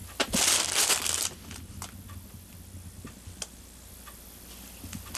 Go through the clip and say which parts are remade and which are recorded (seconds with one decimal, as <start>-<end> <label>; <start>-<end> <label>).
0.0-5.2 recorded